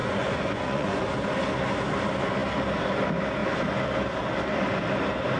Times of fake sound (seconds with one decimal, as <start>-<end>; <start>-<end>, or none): 0.0-1.0